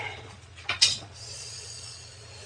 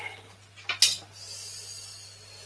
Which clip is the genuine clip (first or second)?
second